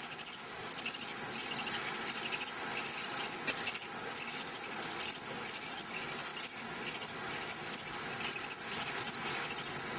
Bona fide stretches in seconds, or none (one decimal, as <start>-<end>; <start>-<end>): 0.0-10.0